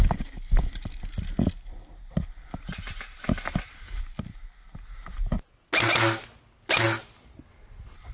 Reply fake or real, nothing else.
real